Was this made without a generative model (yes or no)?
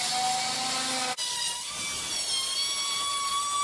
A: yes